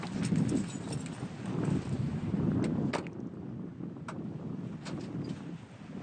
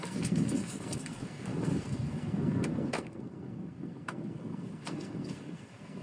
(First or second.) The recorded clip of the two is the first